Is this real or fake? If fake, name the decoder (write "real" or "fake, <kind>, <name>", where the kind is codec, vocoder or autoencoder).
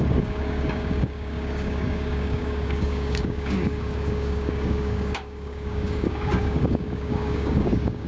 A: fake, codec, DAC